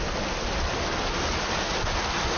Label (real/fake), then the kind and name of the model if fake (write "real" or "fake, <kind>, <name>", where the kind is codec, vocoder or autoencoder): real